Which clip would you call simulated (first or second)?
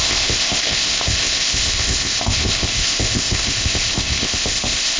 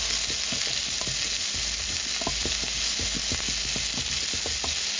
first